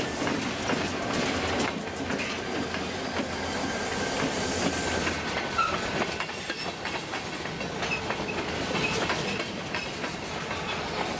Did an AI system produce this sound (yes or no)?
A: no